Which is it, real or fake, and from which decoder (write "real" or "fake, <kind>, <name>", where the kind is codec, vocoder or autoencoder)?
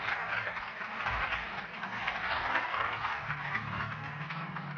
fake, codec, DAC